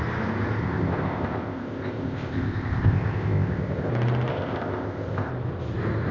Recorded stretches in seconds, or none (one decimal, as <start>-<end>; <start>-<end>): 0.0-0.6; 3.9-4.3; 5.3-6.1